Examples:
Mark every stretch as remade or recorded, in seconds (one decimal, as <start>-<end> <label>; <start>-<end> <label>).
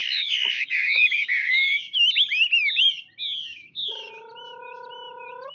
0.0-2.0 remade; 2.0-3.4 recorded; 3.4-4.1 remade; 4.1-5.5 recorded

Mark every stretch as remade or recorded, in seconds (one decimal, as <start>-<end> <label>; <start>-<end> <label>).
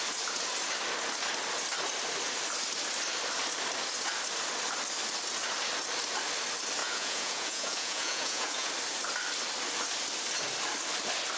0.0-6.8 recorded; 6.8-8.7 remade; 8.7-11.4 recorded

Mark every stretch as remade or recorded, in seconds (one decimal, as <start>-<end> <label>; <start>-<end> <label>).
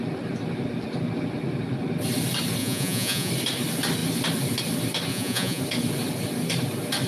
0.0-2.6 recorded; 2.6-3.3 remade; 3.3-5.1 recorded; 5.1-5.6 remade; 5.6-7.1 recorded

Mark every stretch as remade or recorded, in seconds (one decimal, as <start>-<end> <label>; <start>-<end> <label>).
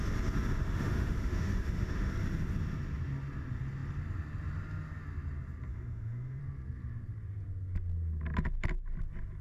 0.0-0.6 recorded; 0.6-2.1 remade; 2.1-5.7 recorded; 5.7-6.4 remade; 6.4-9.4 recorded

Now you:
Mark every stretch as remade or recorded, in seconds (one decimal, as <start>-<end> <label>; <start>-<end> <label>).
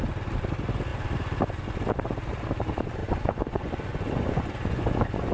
0.0-3.0 recorded; 3.0-5.3 remade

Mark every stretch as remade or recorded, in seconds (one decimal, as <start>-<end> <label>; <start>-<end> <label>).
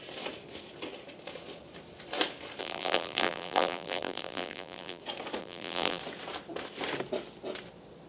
0.0-2.6 recorded; 2.6-5.0 remade; 5.0-5.4 recorded; 5.4-6.0 remade; 6.0-8.1 recorded